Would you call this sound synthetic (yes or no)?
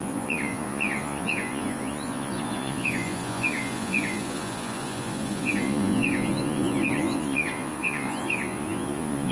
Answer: yes